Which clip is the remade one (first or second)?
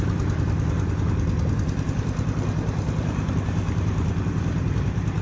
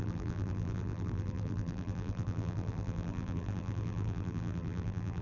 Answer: second